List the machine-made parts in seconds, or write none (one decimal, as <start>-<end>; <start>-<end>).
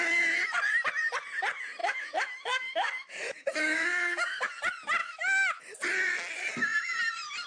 1.8-4.5; 5.0-5.6